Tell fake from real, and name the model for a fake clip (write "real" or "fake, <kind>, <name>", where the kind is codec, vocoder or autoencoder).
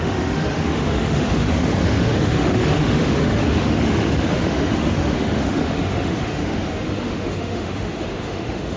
fake, autoencoder, DAC-VAE